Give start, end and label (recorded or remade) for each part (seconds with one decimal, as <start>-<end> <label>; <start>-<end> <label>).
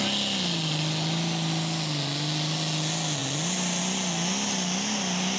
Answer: 0.0-5.4 recorded